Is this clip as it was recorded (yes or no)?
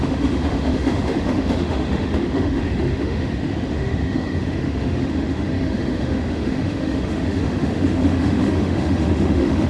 no